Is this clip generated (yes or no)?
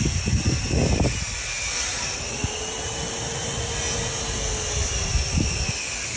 no